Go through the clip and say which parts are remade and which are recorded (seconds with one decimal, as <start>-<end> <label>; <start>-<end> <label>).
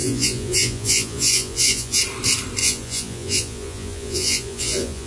0.0-2.0 remade; 2.0-2.6 recorded; 2.6-5.1 remade